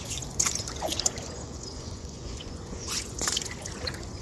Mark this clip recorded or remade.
remade